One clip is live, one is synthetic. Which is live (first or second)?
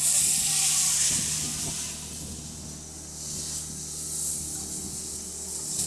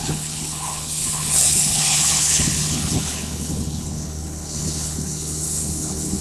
first